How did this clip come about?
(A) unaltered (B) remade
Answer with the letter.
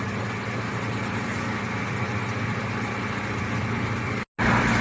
A